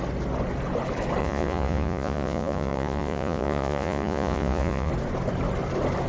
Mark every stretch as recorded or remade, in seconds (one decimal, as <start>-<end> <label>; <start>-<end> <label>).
0.0-1.2 recorded; 1.2-4.9 remade; 4.9-6.1 recorded